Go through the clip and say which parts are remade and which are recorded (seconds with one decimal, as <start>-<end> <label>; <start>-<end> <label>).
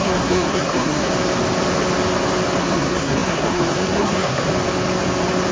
0.0-1.1 remade; 1.1-2.6 recorded; 2.6-4.5 remade; 4.5-5.5 recorded